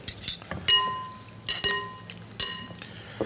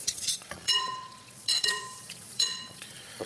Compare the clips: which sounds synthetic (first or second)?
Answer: second